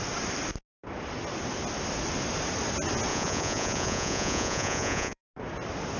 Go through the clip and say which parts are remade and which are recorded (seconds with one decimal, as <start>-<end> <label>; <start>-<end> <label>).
0.0-3.1 recorded; 3.1-5.2 remade; 5.2-6.0 recorded